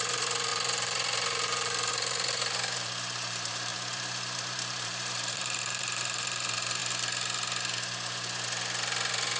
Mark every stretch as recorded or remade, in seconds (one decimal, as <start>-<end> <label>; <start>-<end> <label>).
0.0-6.8 remade; 6.8-9.4 recorded